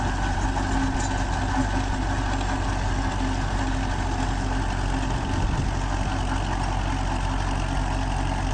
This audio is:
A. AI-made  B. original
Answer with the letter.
B